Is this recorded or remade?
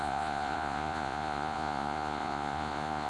remade